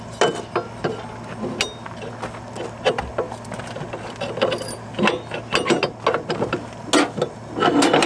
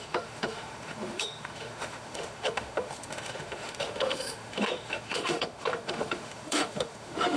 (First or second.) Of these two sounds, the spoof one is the second